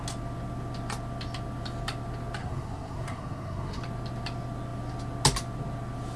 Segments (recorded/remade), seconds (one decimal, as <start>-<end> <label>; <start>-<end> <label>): 0.0-2.4 recorded; 2.4-3.8 remade; 3.8-6.2 recorded